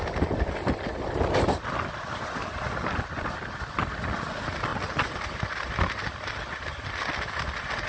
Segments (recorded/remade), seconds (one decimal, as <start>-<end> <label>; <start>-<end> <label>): 0.0-7.9 recorded